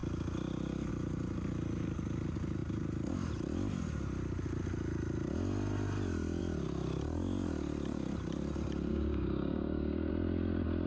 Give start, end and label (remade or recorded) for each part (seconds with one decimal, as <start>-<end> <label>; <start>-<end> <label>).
0.0-8.9 recorded; 8.9-10.1 remade; 10.1-10.9 recorded